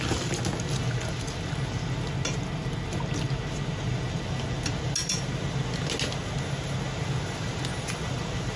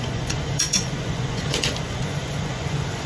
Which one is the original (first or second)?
first